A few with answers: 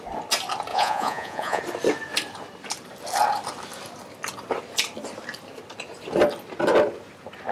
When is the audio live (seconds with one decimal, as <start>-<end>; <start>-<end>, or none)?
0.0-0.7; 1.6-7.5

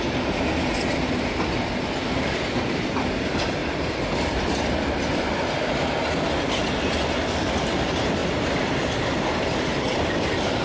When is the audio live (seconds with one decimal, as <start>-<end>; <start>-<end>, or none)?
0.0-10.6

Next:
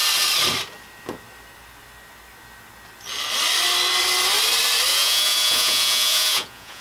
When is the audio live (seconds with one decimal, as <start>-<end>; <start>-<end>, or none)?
0.0-4.9